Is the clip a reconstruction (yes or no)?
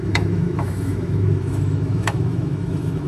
yes